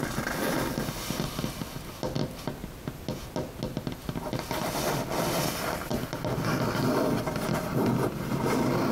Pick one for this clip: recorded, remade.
recorded